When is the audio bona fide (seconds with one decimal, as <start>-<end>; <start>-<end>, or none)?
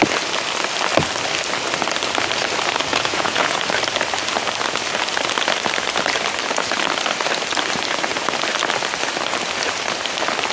0.0-2.9; 3.6-10.5